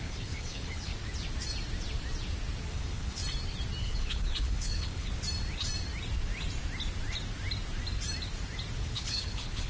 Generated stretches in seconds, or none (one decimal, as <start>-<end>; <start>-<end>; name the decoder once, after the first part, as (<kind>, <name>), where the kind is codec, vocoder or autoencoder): 0.0-0.9 (codec, HILCodec); 2.7-3.2; 3.8-5.1; 8.8-9.7